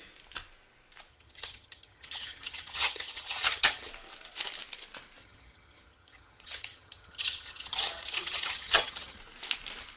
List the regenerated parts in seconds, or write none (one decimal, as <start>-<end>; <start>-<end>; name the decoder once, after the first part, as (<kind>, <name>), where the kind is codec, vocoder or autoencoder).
1.1-3.9 (vocoder, HiFi-GAN); 5.2-9.2